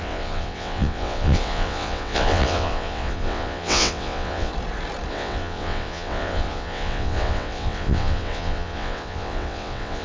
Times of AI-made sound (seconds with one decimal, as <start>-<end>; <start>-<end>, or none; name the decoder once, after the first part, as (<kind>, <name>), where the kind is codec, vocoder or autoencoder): 0.0-4.5 (vocoder, WaveNeXt); 5.1-10.0